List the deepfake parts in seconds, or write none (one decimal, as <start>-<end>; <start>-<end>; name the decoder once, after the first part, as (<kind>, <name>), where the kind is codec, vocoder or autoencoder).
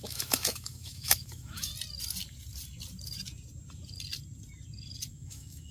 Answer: 0.0-1.7 (autoencoder, DAC-VAE); 5.1-5.7